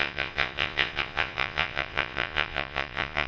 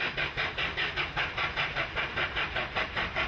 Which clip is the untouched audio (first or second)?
second